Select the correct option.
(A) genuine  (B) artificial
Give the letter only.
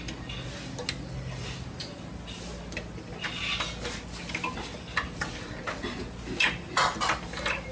A